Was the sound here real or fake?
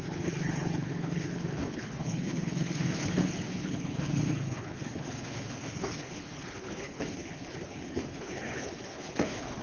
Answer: fake